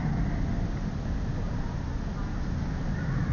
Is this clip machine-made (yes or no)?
no